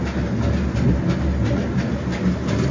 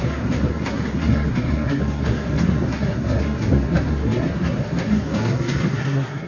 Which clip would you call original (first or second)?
first